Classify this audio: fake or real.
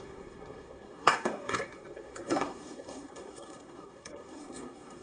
fake